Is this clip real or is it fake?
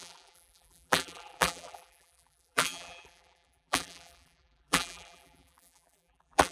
fake